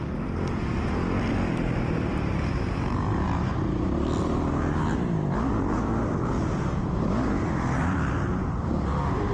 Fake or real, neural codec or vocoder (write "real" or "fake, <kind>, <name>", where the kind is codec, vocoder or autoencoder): real